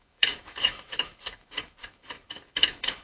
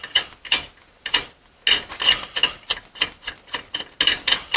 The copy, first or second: first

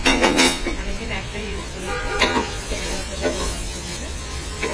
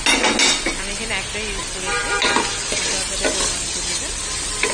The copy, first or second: first